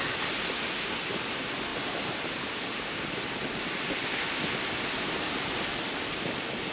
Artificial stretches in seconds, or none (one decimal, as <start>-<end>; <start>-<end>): 1.7-4.1